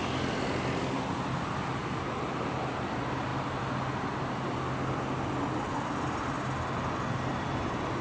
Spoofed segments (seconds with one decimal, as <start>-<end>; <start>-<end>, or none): none